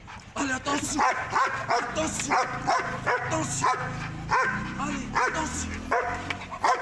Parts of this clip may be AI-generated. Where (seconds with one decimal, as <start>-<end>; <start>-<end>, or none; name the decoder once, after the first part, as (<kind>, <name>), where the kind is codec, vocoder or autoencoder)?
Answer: none